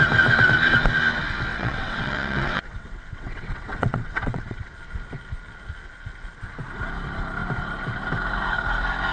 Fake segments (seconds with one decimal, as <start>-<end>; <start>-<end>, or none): 1.5-4.7